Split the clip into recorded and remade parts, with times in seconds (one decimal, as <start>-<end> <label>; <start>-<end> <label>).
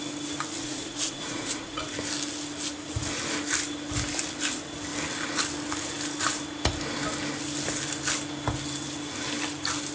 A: 0.0-0.6 recorded; 0.6-1.8 remade; 1.8-9.9 recorded